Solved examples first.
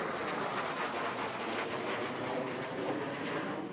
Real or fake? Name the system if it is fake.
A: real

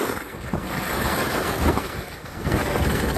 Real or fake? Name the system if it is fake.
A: fake, codec, SNAC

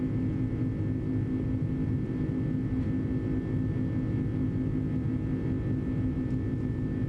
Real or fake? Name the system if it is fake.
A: real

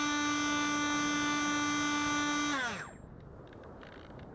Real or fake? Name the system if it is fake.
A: real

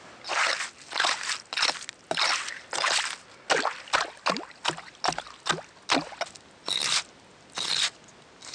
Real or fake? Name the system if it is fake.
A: real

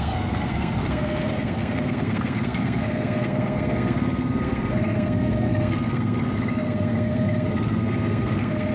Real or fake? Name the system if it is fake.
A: fake, codec, SNAC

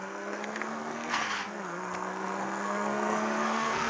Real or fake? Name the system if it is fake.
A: fake, codec, SNAC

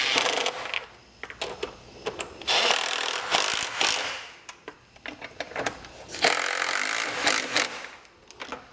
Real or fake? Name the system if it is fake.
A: real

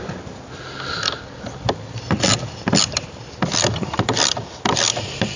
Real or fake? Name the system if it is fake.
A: real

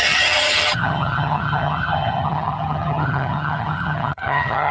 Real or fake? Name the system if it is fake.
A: fake, vocoder, HiFi-GAN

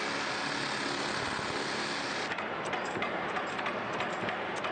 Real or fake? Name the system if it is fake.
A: real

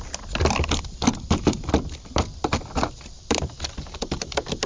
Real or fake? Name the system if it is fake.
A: real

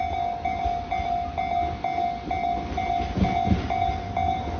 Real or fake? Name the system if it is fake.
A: real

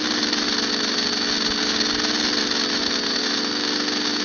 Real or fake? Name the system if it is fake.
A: real